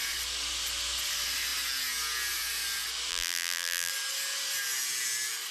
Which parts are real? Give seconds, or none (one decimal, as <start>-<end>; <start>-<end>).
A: 0.0-3.1; 3.9-5.5